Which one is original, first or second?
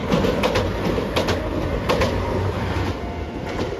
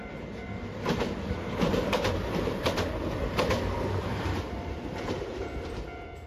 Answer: first